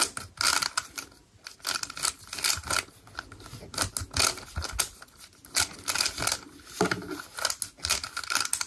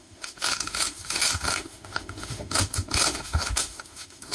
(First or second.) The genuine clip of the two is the first